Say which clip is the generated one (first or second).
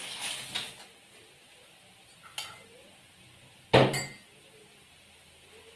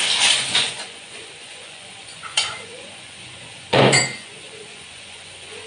second